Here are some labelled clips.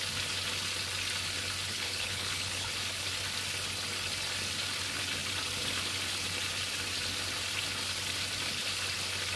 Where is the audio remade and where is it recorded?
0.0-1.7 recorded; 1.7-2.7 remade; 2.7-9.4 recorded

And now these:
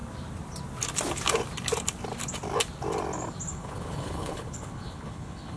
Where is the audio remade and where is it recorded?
0.0-3.5 recorded; 3.5-5.6 remade

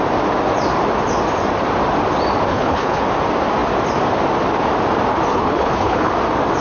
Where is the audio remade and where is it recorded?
0.0-2.5 recorded; 2.5-3.0 remade; 3.0-5.3 recorded; 5.3-6.1 remade; 6.1-6.6 recorded

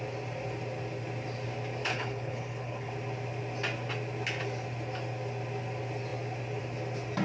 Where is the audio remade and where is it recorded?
0.0-1.8 recorded; 1.8-2.9 remade; 2.9-7.2 recorded